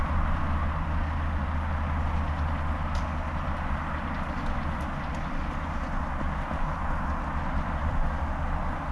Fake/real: real